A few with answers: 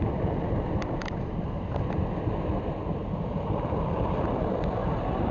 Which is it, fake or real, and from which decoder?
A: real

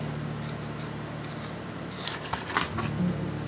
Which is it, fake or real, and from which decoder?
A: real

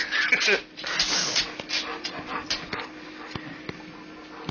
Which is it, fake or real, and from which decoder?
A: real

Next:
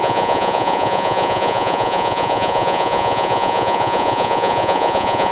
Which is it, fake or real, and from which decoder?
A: fake, vocoder, Vocos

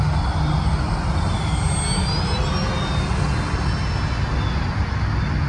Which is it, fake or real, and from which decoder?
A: real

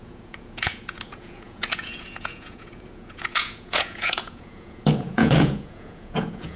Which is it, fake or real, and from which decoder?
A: fake, vocoder, Vocos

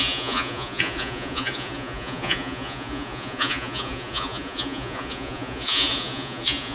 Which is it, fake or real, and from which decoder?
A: fake, vocoder, Vocos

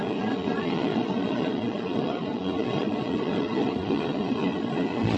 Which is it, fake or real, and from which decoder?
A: fake, vocoder, Vocos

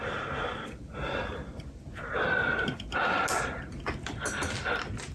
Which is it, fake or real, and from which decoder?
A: real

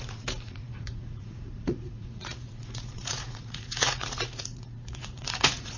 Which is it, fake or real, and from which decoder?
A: fake, vocoder, Vocos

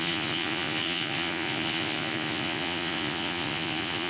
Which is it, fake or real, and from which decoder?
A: fake, vocoder, Vocos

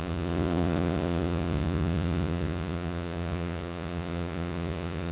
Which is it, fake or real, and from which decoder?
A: fake, vocoder, Vocos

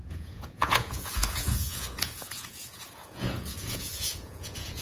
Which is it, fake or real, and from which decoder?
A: fake, vocoder, Vocos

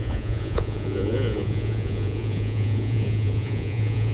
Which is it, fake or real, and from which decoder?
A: fake, vocoder, Vocos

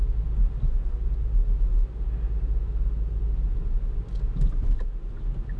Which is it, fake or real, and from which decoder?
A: real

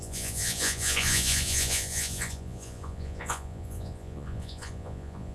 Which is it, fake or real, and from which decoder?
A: fake, vocoder, Vocos